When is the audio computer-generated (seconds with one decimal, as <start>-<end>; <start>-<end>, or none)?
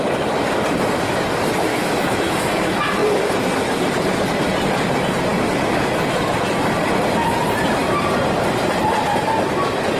1.7-2.5